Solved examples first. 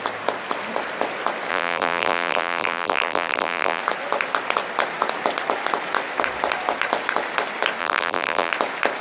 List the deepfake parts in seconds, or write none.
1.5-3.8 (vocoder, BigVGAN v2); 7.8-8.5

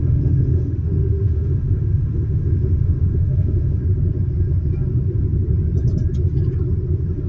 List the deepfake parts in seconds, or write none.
0.0-3.8 (autoencoder, DAC-VAE)

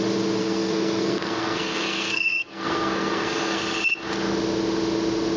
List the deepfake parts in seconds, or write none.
0.4-3.6 (codec, SNAC)

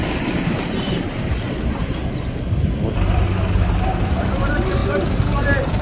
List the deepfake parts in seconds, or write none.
0.0-2.0 (vocoder, BigVGAN v2); 4.2-4.8